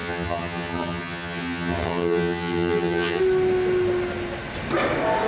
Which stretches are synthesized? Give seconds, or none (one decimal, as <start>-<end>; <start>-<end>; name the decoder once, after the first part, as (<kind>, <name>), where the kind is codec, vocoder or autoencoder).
0.0-3.2 (vocoder, HiFi-GAN)